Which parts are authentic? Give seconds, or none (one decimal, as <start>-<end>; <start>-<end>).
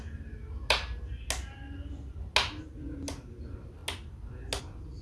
0.0-5.0